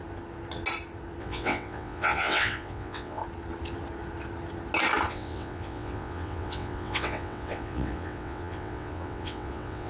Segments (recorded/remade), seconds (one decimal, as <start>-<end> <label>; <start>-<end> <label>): 0.0-1.2 recorded; 1.2-3.2 remade; 3.2-5.1 recorded; 5.1-9.9 remade